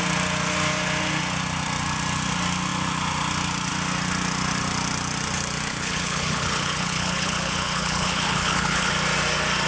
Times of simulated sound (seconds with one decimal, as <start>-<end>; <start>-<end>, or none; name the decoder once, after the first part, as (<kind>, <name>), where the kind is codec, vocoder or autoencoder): 5.7-8.9 (codec, HILCodec)